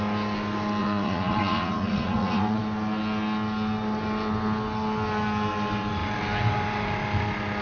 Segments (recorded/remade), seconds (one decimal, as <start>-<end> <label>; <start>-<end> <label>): 0.0-0.8 recorded; 0.8-2.6 remade; 2.6-7.6 recorded